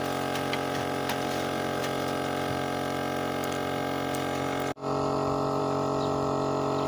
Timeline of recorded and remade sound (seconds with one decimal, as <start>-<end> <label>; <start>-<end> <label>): 0.0-6.9 recorded